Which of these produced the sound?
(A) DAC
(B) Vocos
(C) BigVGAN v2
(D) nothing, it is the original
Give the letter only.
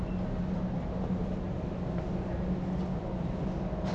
D